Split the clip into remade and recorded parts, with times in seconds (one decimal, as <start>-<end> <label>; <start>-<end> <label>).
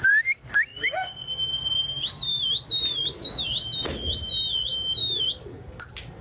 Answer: 0.0-0.7 recorded; 0.7-1.5 remade; 1.5-5.0 recorded; 5.0-5.8 remade; 5.8-6.2 recorded